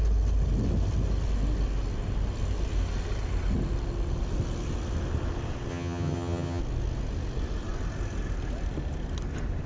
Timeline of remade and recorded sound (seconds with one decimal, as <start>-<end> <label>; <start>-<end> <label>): 0.0-5.7 recorded; 5.7-6.6 remade; 6.6-9.7 recorded